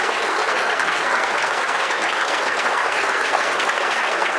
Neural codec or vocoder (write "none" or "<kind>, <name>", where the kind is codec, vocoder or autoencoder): codec, SNAC